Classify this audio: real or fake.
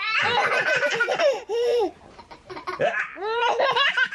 fake